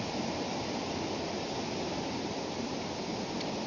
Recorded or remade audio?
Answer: recorded